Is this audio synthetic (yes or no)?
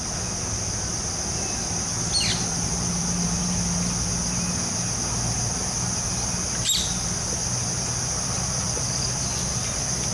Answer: no